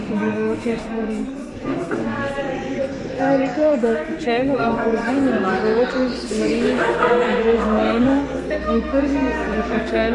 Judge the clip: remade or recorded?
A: remade